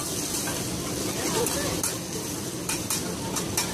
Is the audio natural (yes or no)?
yes